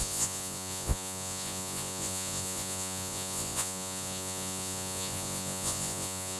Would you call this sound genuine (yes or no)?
no